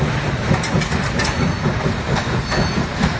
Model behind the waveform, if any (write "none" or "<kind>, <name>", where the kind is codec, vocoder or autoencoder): none